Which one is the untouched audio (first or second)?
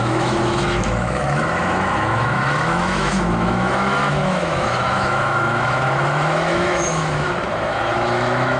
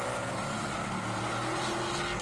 second